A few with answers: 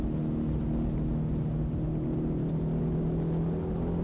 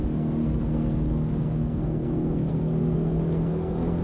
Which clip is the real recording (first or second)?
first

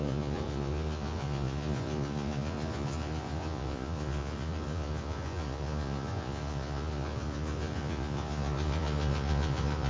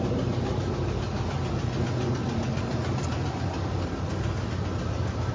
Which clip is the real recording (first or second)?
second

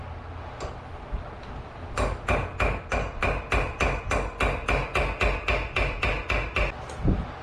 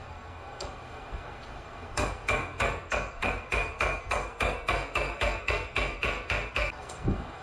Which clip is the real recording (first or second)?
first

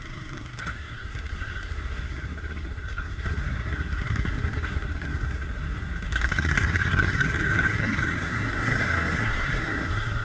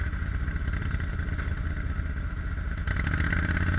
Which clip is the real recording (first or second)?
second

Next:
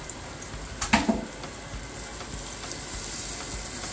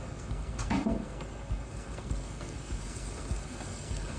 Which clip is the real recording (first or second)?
first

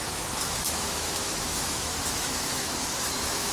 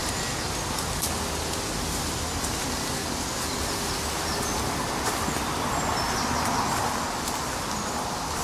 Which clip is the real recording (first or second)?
second